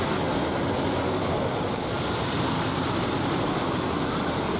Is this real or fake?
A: real